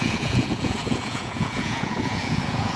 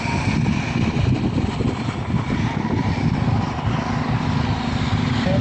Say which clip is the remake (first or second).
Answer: first